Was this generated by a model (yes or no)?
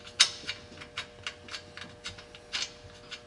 no